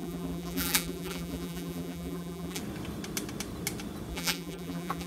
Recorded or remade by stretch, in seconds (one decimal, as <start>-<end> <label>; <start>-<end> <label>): 0.0-2.6 remade; 2.6-4.1 recorded; 4.1-5.1 remade